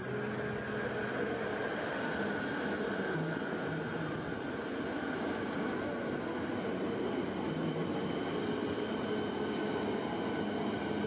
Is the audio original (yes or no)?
yes